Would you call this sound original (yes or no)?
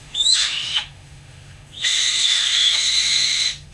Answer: no